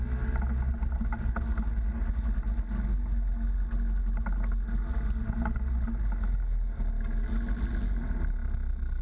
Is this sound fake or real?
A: real